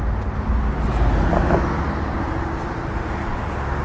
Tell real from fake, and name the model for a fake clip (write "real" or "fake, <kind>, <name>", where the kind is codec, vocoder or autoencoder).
real